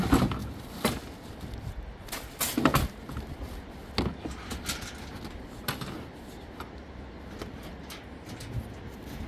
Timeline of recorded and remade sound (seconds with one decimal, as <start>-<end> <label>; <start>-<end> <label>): 0.0-9.3 recorded